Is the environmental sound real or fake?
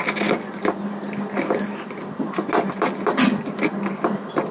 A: real